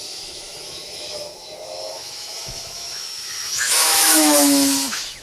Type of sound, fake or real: fake